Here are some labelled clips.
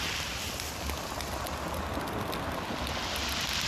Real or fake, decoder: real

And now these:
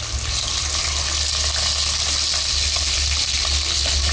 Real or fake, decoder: real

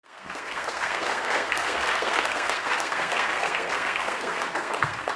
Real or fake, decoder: fake, codec, SNAC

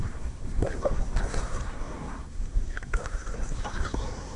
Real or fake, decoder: fake, codec, SNAC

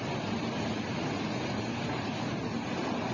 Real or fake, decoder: real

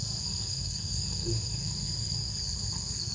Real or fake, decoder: fake, codec, SNAC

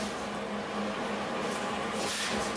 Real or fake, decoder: real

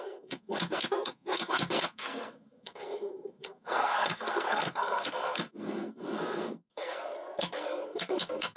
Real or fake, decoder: fake, codec, SNAC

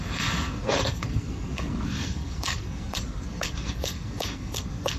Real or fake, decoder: fake, codec, SNAC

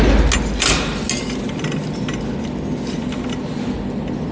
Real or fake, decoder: real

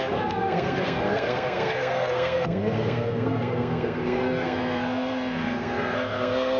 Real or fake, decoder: fake, codec, SNAC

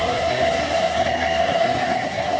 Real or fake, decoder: fake, codec, SNAC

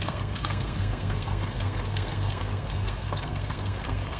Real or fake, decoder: fake, codec, SNAC